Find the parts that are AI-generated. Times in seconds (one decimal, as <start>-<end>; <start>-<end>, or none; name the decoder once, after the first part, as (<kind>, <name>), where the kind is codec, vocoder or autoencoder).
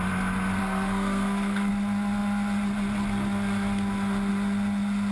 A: 0.6-1.7 (codec, SNAC)